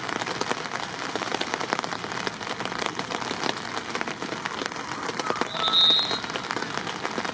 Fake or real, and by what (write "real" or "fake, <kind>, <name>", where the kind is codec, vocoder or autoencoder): real